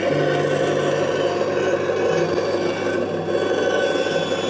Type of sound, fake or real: real